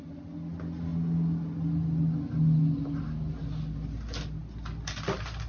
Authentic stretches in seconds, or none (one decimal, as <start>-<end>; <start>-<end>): 0.0-5.5